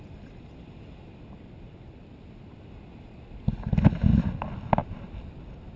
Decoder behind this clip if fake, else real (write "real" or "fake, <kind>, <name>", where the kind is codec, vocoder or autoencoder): real